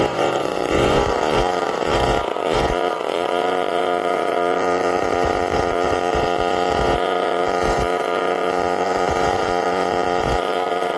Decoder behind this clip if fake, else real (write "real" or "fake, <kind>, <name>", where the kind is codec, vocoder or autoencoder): fake, vocoder, Vocos